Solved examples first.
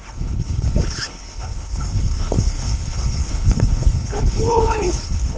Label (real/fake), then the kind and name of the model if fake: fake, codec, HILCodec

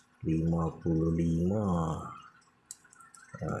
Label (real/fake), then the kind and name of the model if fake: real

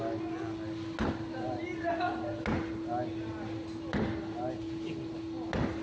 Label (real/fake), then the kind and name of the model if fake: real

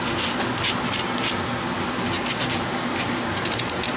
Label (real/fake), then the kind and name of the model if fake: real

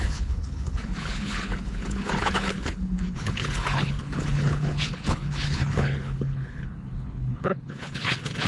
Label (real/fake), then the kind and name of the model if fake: fake, codec, HILCodec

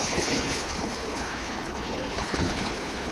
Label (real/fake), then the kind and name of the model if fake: fake, codec, HILCodec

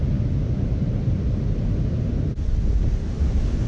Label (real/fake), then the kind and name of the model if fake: real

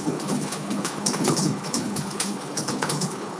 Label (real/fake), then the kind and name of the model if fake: fake, codec, HILCodec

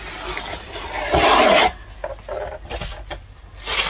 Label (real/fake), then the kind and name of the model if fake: real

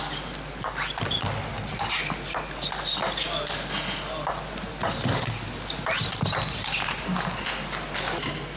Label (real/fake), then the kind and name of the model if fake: real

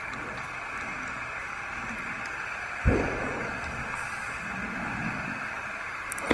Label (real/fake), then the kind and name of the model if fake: real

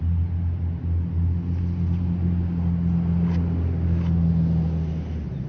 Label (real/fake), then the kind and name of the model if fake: real